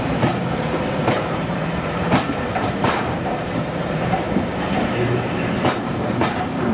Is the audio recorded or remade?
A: remade